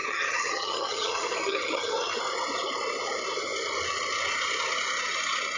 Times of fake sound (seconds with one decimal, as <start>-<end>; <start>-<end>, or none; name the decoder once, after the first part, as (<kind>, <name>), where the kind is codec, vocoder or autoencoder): 0.0-2.2 (vocoder, HiFi-GAN)